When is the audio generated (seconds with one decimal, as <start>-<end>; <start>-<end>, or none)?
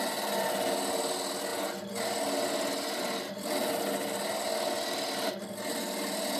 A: none